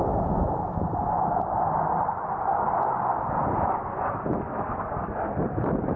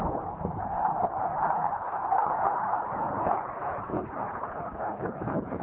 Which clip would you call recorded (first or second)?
first